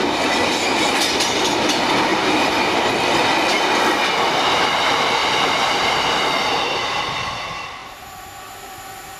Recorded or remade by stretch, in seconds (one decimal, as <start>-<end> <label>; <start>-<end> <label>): 0.0-2.1 recorded; 2.1-2.9 remade; 2.9-5.2 recorded; 5.2-6.3 remade; 6.3-7.8 recorded; 7.8-8.3 remade; 8.3-9.2 recorded